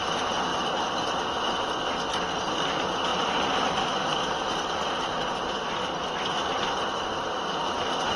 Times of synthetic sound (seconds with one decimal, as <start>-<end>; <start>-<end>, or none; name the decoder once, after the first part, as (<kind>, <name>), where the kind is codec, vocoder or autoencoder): 0.5-1.7 (vocoder, BigVGAN v2); 3.1-7.6